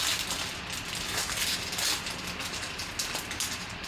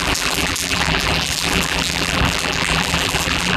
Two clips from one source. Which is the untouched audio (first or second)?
first